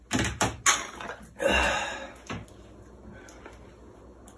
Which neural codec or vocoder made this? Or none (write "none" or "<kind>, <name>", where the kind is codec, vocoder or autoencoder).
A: none